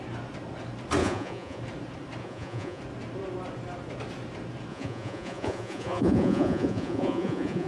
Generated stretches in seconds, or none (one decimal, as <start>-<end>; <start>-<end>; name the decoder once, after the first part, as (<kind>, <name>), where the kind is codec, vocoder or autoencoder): 1.0-1.6 (vocoder, Vocos); 2.2-2.8; 4.7-7.7